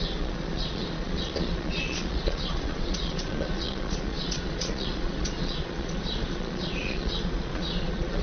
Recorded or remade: remade